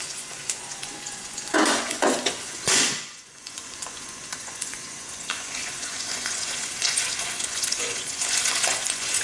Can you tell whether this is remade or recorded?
remade